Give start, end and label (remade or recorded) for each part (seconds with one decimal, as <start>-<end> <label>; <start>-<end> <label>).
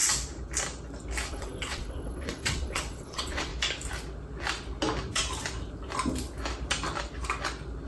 0.0-1.3 recorded; 1.3-3.5 remade; 3.5-7.9 recorded